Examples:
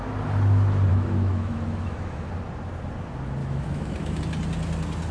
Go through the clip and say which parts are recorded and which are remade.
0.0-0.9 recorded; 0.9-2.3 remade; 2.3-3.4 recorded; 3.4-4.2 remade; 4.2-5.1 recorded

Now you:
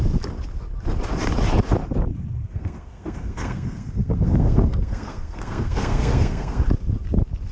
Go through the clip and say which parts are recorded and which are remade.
0.0-2.4 recorded; 2.4-6.6 remade; 6.6-7.5 recorded

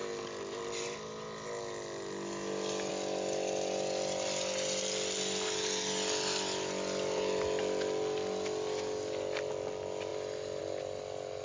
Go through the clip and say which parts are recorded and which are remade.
0.0-11.4 recorded